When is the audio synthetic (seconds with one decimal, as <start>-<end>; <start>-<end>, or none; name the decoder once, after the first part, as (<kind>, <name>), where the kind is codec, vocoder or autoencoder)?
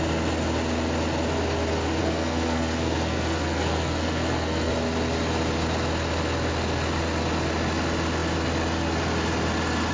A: 2.0-4.7 (codec, SNAC)